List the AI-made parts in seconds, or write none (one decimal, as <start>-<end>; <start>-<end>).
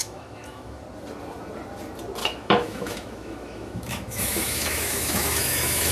0.0-0.8; 2.2-5.9